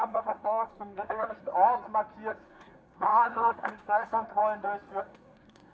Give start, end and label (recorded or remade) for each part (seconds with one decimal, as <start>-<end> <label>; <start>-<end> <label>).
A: 0.0-1.5 remade; 1.5-2.3 recorded; 2.3-4.4 remade; 4.4-5.0 recorded; 5.0-5.7 remade

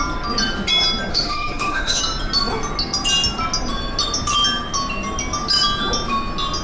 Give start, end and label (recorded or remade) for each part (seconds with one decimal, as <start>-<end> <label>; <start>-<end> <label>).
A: 0.0-1.1 recorded; 1.1-2.0 remade; 2.0-6.6 recorded

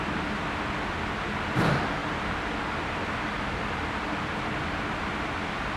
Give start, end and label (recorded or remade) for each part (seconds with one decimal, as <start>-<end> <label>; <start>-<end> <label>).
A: 0.0-2.0 recorded; 2.0-4.2 remade; 4.2-5.8 recorded

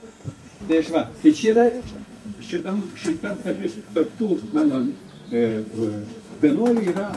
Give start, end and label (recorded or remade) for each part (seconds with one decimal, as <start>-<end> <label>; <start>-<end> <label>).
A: 0.0-0.6 remade; 0.6-1.4 recorded; 1.4-5.0 remade; 5.0-5.5 recorded; 5.5-6.5 remade; 6.5-7.2 recorded